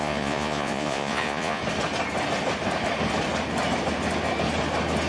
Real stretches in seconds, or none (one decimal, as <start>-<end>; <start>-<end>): 1.6-5.1